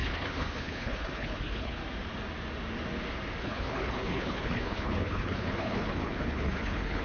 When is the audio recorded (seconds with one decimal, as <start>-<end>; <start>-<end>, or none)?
1.8-3.4